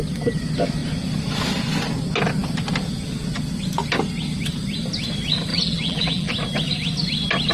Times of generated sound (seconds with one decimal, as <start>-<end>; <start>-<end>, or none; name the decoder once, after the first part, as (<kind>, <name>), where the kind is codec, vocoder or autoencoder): 5.5-6.3 (vocoder, BigVGAN v2)